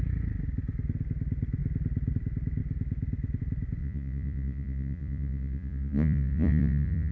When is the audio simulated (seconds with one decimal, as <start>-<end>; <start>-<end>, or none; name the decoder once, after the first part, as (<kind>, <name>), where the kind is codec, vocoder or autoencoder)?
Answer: 3.8-7.1 (vocoder, Vocos)